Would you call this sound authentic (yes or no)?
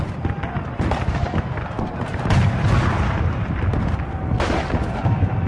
yes